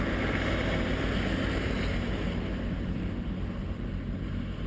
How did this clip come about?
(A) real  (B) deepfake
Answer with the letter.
A